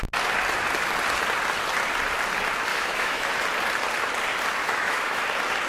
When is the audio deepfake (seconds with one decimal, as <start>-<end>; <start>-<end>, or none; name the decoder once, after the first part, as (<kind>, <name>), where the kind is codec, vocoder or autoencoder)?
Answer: 2.7-3.3 (autoencoder, DAC-VAE); 4.6-5.2